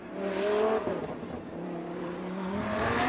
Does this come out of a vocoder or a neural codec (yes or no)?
yes